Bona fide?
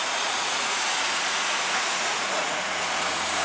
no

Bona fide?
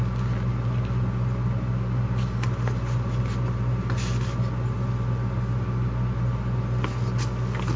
yes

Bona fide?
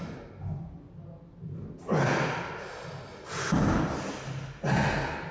yes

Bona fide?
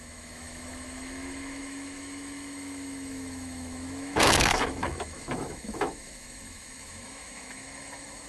no